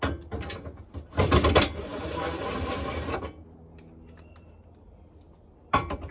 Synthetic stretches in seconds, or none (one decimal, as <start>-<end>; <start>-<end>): none